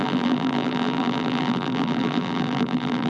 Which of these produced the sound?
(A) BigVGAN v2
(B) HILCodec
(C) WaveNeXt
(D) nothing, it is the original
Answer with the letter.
A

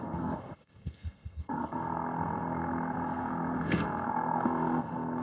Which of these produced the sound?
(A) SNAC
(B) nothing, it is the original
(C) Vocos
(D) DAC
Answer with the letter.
A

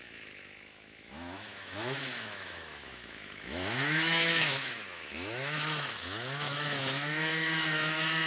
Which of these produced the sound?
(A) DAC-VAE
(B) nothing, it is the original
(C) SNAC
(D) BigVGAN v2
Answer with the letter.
A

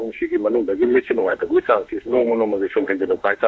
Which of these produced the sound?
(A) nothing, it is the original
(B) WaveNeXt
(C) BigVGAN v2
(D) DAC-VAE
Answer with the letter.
D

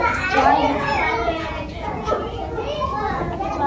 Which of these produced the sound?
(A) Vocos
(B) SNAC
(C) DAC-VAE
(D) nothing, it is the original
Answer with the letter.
A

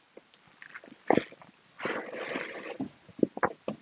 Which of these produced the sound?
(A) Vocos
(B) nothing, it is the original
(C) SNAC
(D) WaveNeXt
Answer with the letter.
B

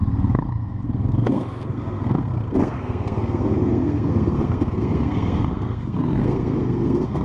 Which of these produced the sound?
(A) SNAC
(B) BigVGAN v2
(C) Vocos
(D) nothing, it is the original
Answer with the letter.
A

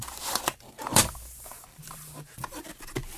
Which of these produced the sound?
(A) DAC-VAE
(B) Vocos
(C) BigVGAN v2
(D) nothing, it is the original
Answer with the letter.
C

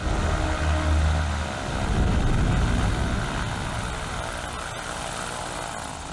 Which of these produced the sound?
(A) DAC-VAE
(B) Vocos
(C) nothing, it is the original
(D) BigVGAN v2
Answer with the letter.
C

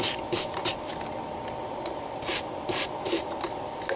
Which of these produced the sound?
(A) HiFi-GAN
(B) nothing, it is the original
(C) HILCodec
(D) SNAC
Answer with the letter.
B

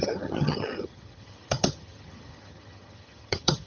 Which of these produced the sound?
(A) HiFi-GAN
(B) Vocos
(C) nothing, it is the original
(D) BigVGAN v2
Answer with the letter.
A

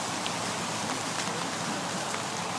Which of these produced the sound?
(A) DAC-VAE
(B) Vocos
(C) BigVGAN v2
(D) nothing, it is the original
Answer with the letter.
D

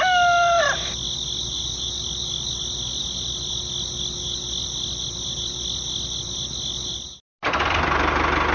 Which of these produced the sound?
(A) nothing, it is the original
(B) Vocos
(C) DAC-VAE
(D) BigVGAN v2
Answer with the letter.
A